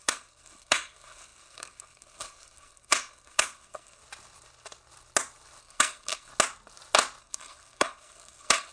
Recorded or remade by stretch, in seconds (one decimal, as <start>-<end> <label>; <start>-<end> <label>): 0.0-4.0 remade; 4.0-5.6 recorded; 5.6-6.3 remade; 6.3-7.2 recorded; 7.2-8.7 remade